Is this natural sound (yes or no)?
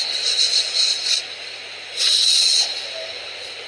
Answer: yes